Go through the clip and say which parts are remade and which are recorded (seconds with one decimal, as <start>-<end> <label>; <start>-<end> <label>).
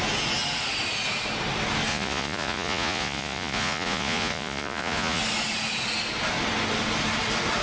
0.0-1.9 recorded; 1.9-5.2 remade; 5.2-7.6 recorded